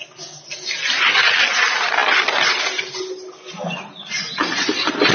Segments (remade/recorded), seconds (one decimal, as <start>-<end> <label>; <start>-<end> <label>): 0.0-5.1 recorded